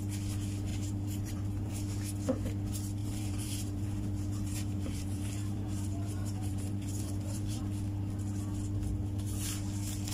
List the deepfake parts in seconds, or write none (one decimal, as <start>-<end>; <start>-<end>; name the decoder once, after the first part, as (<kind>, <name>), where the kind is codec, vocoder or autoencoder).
0.7-1.7 (vocoder, BigVGAN v2); 3.0-7.6